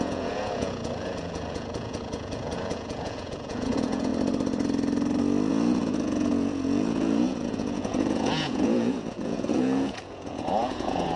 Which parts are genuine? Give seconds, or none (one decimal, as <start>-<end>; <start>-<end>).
4.1-5.5